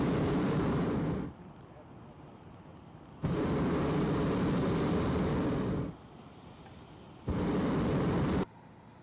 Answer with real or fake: real